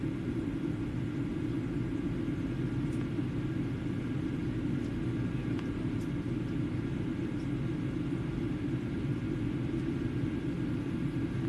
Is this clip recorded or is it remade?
recorded